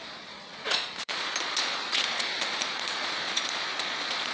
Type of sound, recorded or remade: remade